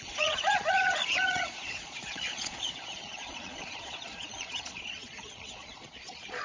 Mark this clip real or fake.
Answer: fake